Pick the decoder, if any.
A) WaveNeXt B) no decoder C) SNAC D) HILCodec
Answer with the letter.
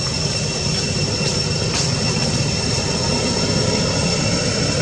B